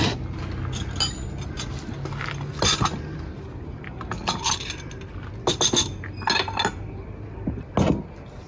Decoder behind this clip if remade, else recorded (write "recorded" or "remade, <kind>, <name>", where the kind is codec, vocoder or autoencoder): recorded